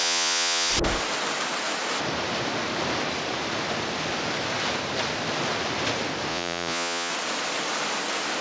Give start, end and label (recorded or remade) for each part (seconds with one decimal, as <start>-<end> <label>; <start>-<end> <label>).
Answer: 0.0-0.7 remade; 0.7-6.3 recorded; 6.3-7.1 remade; 7.1-8.4 recorded